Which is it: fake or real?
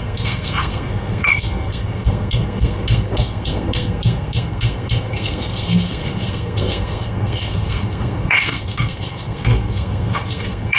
fake